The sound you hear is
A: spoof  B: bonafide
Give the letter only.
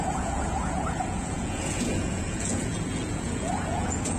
A